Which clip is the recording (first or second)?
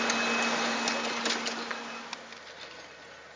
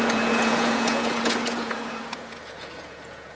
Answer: first